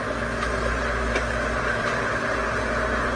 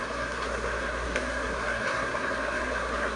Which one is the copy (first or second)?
second